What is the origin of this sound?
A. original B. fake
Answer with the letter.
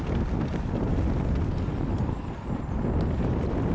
A